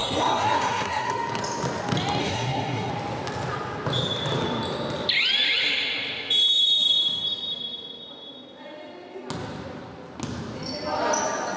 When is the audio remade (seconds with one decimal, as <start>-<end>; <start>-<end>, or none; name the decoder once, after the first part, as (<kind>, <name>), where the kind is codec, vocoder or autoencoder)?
0.0-1.1 (codec, SNAC); 2.2-2.9